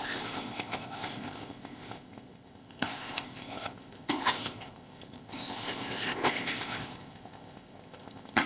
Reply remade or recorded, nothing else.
remade